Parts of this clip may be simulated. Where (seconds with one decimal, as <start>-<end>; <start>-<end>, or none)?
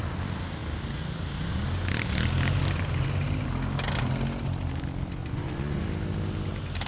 5.2-5.8